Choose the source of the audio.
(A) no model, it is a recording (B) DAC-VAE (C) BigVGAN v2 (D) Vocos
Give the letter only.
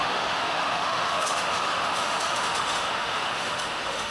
B